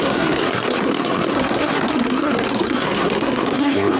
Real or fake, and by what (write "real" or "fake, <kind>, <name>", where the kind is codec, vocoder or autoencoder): fake, codec, SNAC